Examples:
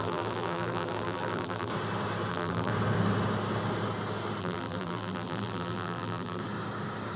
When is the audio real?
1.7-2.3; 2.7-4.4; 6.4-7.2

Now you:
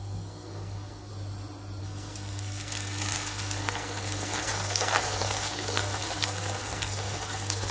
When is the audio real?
1.1-1.8

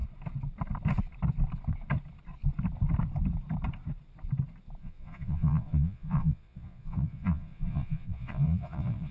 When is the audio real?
0.0-4.8

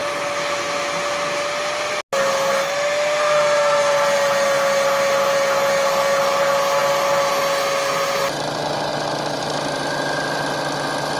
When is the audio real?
0.0-11.2

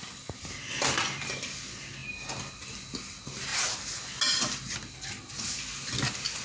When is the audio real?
0.0-6.4

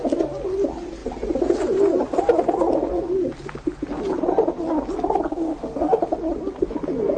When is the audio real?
0.0-5.3; 6.1-7.2